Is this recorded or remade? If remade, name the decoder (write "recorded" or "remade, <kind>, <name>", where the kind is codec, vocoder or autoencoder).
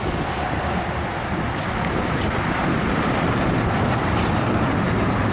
remade, vocoder, BigVGAN v2